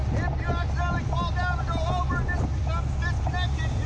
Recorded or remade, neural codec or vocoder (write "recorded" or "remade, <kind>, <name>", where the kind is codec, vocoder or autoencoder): recorded